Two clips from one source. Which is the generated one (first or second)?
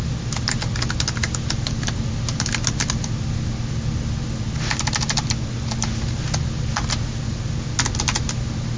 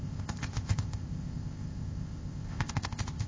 second